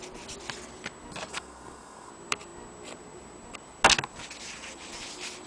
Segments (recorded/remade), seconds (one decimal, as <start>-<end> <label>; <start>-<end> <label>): 0.0-1.3 recorded; 1.3-2.1 remade; 2.1-5.5 recorded